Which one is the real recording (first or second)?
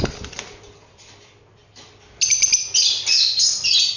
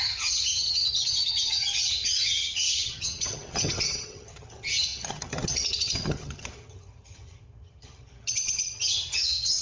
first